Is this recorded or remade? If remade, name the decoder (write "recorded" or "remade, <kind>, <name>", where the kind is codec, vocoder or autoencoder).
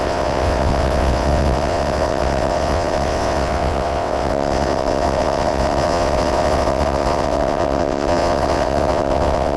remade, vocoder, WaveNeXt